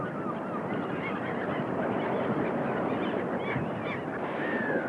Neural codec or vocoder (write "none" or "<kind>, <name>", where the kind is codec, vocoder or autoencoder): none